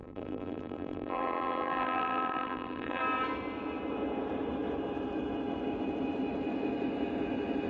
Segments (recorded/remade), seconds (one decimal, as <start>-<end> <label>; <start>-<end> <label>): 0.0-3.0 remade; 3.0-7.7 recorded